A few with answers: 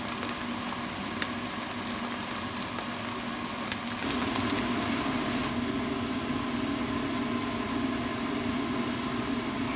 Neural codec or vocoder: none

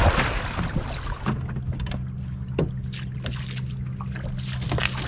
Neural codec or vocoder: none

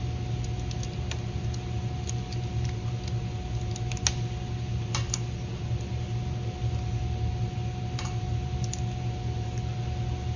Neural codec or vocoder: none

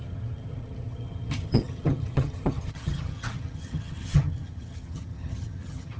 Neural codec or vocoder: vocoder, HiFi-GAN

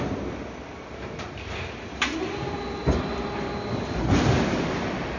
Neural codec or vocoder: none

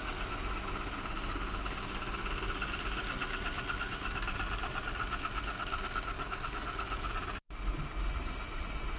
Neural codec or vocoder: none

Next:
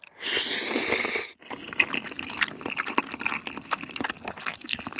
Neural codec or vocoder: none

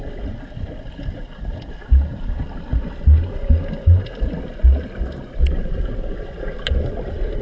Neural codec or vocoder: none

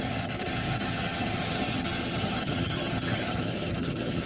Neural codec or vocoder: vocoder, HiFi-GAN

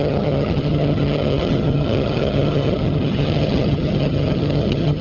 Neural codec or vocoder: vocoder, HiFi-GAN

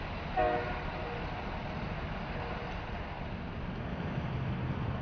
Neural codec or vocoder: none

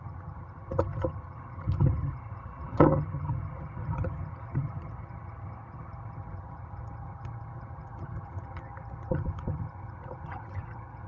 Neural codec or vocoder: vocoder, HiFi-GAN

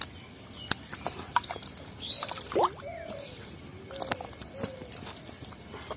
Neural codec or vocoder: none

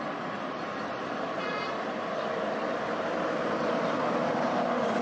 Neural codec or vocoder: none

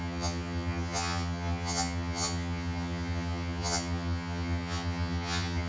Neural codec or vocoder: vocoder, HiFi-GAN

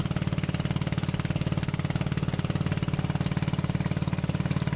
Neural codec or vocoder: none